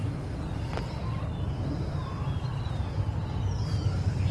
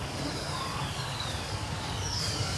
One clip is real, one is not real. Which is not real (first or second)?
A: second